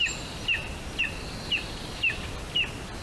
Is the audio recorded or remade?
recorded